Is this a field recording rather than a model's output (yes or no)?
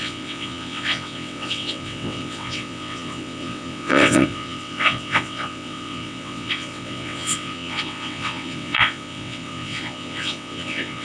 no